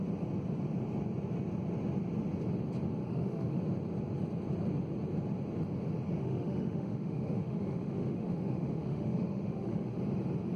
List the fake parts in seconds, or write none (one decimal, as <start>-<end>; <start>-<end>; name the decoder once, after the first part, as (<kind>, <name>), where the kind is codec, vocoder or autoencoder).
3.0-3.6 (autoencoder, DAC-VAE); 6.2-10.0